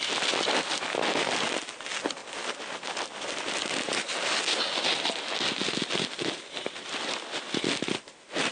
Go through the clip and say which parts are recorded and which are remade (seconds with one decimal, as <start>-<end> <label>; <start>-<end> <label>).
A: 0.0-8.5 recorded